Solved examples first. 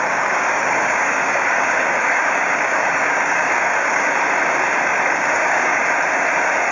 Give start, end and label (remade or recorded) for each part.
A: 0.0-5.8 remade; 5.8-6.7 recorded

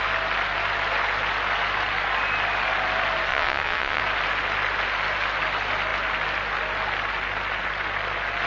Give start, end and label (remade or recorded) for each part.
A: 0.0-3.3 recorded; 3.3-4.0 remade; 4.0-8.5 recorded

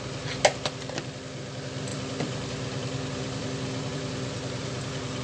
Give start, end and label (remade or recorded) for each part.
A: 0.0-1.9 recorded; 1.9-5.2 remade

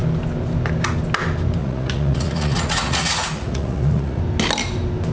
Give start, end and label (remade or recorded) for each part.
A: 0.0-1.6 recorded; 1.6-4.2 remade; 4.2-5.1 recorded

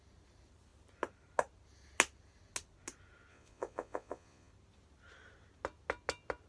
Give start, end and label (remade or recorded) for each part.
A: 0.0-3.3 recorded; 3.3-4.5 remade; 4.5-6.5 recorded

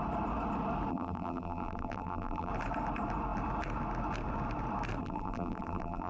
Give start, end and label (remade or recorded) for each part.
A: 0.0-0.9 recorded; 0.9-2.5 remade; 2.5-5.0 recorded; 5.0-6.1 remade